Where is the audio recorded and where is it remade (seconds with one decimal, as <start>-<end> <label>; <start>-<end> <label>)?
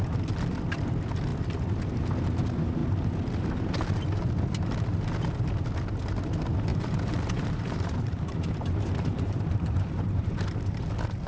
0.0-6.7 recorded; 6.7-10.3 remade; 10.3-11.3 recorded